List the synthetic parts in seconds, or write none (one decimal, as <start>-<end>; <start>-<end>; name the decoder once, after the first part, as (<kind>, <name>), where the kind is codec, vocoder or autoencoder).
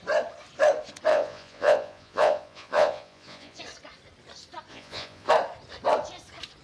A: 1.1-3.6 (vocoder, Vocos); 4.7-5.3